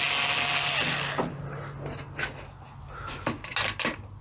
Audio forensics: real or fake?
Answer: real